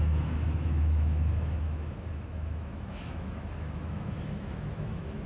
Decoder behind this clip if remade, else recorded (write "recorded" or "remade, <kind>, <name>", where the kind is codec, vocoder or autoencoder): remade, autoencoder, DAC-VAE